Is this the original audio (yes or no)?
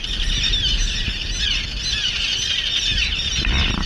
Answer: yes